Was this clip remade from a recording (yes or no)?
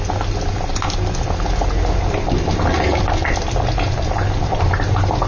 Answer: no